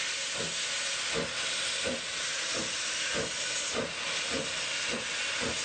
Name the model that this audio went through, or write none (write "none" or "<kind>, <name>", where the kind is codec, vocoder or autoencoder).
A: none